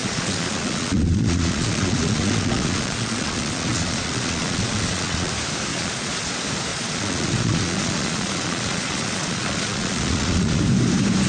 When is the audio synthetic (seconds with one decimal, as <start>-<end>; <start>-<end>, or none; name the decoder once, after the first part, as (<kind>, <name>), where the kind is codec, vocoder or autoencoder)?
0.0-5.3 (vocoder, Vocos); 5.7-6.3; 6.7-10.6